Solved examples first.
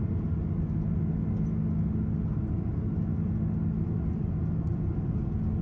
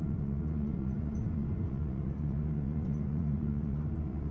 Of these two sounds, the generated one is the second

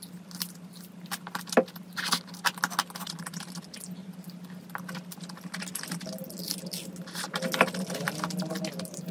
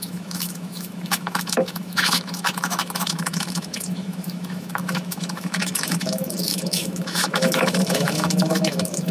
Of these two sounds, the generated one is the second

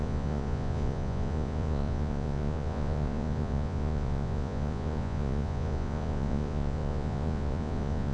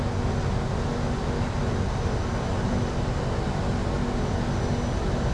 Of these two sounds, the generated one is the first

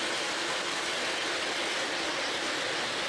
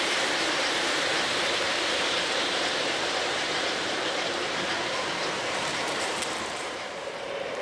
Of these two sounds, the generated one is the second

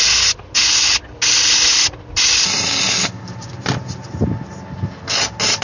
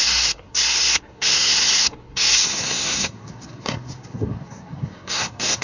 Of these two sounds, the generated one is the second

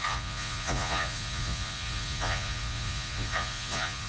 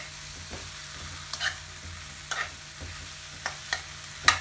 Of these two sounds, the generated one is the first